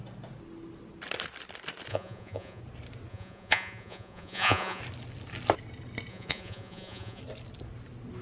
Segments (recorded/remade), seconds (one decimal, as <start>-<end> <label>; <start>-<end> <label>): 0.0-1.9 recorded; 1.9-2.6 remade; 2.6-3.1 recorded; 3.1-4.8 remade; 4.8-6.1 recorded; 6.1-7.2 remade; 7.2-8.2 recorded